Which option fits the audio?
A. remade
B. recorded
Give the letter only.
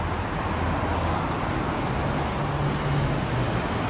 B